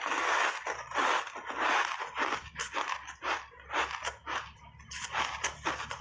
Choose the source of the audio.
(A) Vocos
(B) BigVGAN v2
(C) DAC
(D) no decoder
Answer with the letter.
D